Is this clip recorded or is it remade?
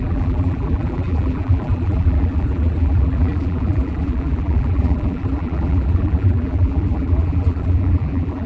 remade